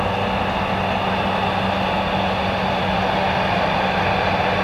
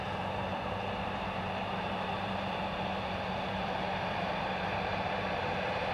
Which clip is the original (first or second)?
first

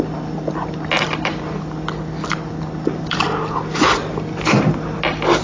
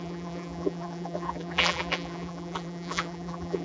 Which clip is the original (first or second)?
first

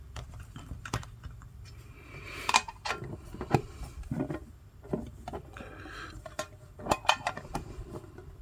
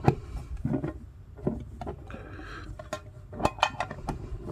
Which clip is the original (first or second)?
second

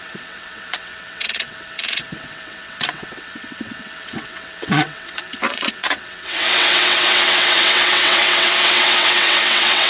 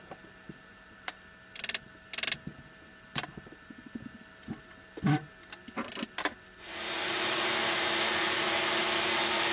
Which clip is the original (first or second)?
second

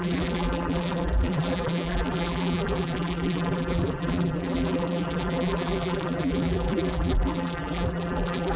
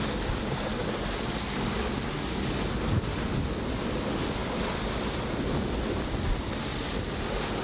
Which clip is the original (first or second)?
second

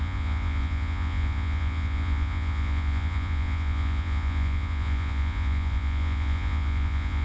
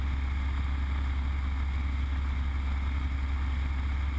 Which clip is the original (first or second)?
second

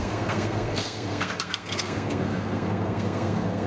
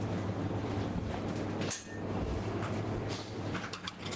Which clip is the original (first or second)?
second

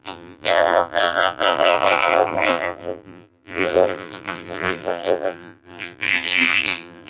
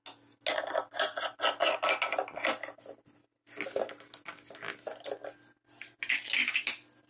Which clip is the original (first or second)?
second